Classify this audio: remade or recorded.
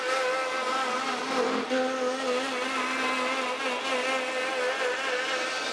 recorded